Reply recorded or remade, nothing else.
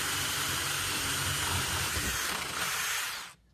recorded